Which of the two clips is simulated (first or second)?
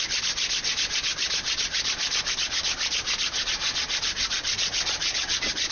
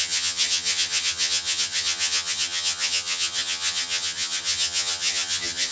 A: second